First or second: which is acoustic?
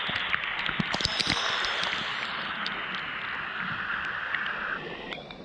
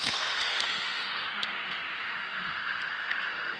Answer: first